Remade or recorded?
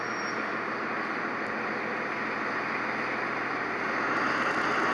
recorded